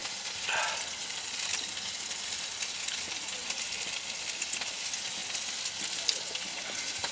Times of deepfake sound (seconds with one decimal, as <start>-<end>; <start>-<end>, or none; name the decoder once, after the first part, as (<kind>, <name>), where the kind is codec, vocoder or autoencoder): 0.0-1.6 (vocoder, BigVGAN v2); 3.4-4.3